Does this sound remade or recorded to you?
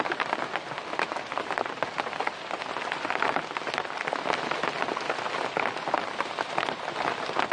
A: recorded